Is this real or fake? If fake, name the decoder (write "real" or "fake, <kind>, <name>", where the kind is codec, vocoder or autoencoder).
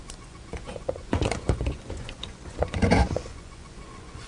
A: fake, vocoder, Vocos